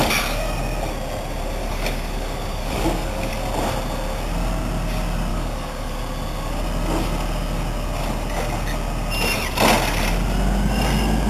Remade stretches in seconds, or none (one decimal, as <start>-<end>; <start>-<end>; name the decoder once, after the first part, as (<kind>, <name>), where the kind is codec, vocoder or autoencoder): 1.6-3.3 (codec, DAC); 5.3-6.0